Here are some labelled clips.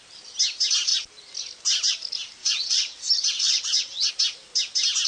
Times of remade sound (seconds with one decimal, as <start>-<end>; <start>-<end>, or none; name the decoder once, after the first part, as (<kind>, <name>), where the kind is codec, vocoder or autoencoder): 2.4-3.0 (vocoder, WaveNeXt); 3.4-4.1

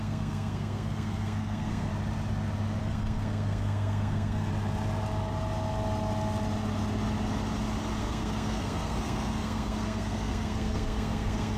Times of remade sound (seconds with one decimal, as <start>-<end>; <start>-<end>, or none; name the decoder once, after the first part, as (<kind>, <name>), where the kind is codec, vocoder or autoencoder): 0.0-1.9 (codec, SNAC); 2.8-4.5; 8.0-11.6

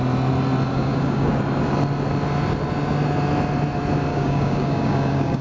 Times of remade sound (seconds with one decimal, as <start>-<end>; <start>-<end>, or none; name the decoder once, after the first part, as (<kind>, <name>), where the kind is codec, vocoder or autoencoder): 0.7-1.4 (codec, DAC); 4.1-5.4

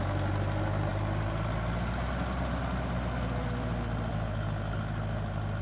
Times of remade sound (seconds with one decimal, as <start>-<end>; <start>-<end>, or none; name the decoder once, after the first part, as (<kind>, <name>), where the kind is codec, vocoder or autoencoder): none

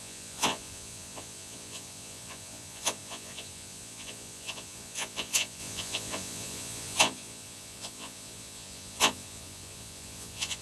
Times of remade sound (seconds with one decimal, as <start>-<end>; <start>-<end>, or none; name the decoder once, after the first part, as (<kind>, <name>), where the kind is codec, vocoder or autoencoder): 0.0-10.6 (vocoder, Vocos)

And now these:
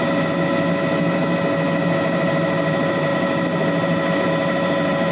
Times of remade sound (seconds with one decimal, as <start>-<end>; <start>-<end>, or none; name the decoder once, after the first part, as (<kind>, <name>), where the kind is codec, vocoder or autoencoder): none

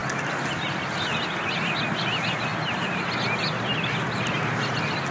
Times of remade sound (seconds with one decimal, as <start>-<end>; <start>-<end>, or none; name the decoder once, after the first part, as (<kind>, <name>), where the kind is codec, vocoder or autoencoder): none